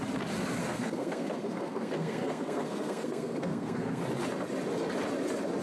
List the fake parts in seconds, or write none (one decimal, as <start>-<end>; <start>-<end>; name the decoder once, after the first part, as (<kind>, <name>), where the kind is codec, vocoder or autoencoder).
0.6-4.0 (codec, SNAC)